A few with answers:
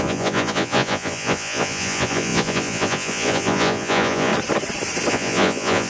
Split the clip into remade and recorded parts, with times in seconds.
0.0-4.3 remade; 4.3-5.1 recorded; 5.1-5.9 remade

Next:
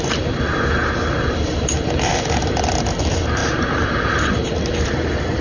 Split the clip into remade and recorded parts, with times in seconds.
0.0-3.4 remade; 3.4-4.8 recorded; 4.8-5.4 remade

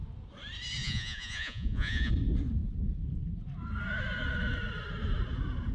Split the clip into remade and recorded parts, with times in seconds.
0.0-0.8 recorded; 0.8-2.1 remade; 2.1-5.7 recorded

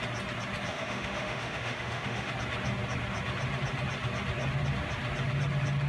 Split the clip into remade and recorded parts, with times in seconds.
0.0-0.7 recorded; 0.7-2.3 remade; 2.3-5.9 recorded

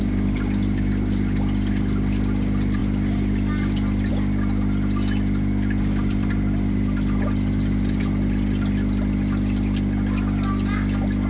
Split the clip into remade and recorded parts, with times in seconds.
0.0-11.3 recorded

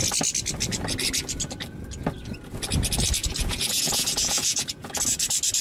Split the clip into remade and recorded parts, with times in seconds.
0.0-3.2 recorded; 3.2-5.0 remade; 5.0-5.6 recorded

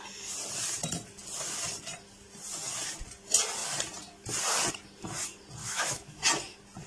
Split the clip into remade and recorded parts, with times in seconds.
0.0-5.6 recorded; 5.6-6.2 remade; 6.2-6.9 recorded

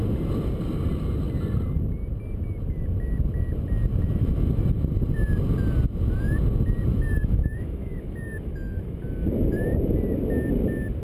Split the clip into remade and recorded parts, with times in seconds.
0.0-6.9 recorded; 6.9-9.0 remade; 9.0-11.0 recorded